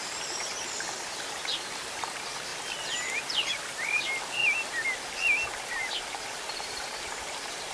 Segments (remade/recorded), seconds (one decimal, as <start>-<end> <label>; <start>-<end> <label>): 0.0-0.5 remade; 0.5-1.9 recorded; 1.9-2.5 remade; 2.5-3.5 recorded; 3.5-4.4 remade; 4.4-5.8 recorded; 5.8-7.7 remade